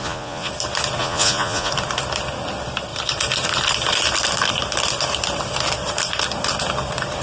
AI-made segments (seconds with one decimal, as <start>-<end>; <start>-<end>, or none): 0.0-0.5; 1.0-1.7